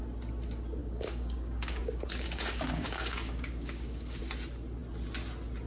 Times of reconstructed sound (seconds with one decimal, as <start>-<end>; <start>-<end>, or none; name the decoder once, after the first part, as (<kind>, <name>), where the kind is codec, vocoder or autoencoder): 0.8-4.2 (codec, DAC)